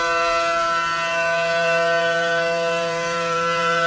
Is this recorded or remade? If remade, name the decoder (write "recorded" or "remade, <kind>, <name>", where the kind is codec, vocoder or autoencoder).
remade, vocoder, BigVGAN v2